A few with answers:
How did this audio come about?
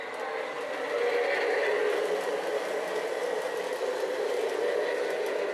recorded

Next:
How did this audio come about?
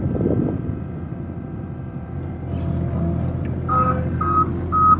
recorded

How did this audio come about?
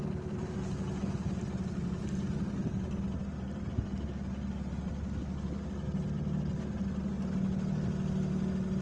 recorded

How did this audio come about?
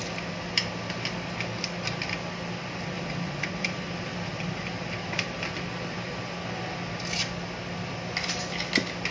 recorded